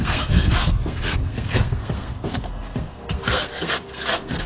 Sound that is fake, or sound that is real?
fake